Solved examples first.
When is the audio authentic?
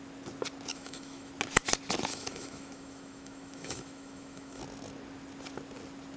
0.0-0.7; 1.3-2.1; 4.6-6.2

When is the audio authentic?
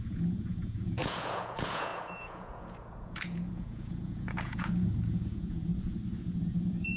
5.7-6.2